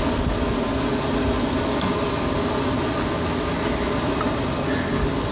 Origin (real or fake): real